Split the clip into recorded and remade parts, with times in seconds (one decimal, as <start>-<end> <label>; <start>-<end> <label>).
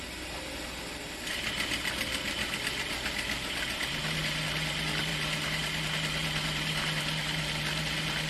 0.0-8.3 recorded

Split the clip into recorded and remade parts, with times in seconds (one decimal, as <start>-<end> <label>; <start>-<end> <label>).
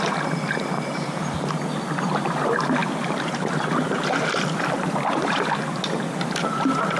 0.0-7.0 recorded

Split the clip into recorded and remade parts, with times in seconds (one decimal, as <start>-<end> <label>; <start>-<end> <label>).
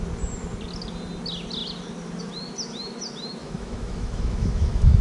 0.0-3.4 recorded; 3.4-5.0 remade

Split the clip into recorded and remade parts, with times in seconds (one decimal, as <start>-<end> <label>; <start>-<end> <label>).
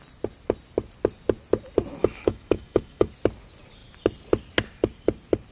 0.0-2.0 recorded; 2.0-3.1 remade; 3.1-5.5 recorded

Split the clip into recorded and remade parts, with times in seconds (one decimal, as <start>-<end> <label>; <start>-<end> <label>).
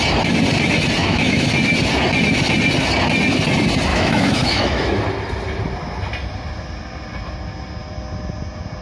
0.0-1.0 recorded; 1.0-1.5 remade; 1.5-3.9 recorded; 3.9-5.0 remade; 5.0-8.8 recorded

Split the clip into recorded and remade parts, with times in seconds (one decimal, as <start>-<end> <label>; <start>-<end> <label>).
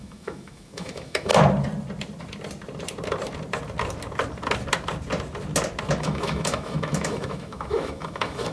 0.0-1.3 remade; 1.3-6.0 recorded; 6.0-8.5 remade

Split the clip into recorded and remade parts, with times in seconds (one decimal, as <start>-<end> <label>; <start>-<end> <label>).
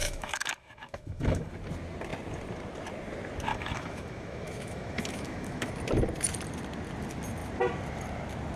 0.0-1.5 remade; 1.5-3.5 recorded; 3.5-5.7 remade; 5.7-8.6 recorded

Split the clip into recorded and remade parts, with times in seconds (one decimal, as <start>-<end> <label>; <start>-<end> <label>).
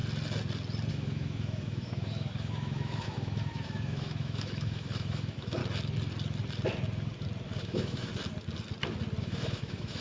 0.0-0.9 recorded; 0.9-5.6 remade; 5.6-7.6 recorded; 7.6-8.1 remade; 8.1-9.2 recorded; 9.2-10.0 remade